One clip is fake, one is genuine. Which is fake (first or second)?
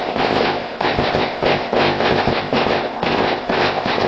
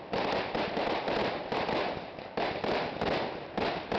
first